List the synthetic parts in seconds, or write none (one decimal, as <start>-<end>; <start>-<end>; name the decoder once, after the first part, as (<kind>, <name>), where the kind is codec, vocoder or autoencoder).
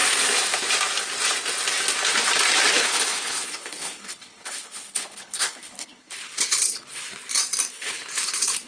2.7-7.0 (codec, HILCodec); 7.7-8.7